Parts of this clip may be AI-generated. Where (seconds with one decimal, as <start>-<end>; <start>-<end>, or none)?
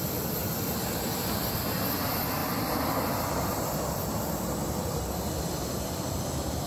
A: none